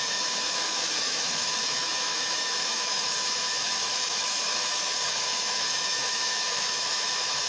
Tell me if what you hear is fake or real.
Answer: fake